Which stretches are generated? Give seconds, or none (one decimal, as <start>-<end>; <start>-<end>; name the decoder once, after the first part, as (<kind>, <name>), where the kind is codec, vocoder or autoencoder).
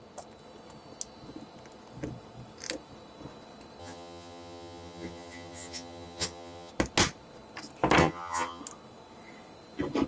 3.8-6.7 (vocoder, HiFi-GAN); 8.0-8.6